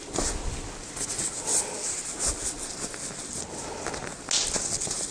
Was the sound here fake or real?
real